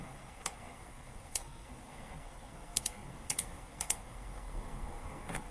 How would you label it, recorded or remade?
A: remade